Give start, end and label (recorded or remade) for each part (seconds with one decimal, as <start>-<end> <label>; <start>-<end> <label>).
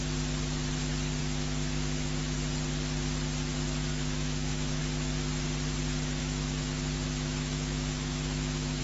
0.0-1.2 recorded; 1.2-2.2 remade; 2.2-3.9 recorded; 3.9-4.8 remade; 4.8-6.2 recorded; 6.2-8.8 remade